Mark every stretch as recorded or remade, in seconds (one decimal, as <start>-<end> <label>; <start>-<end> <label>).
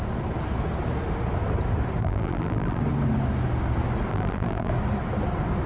0.0-2.0 recorded; 2.0-2.8 remade; 2.8-4.1 recorded; 4.1-4.7 remade; 4.7-5.7 recorded